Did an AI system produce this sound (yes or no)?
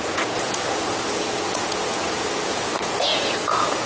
yes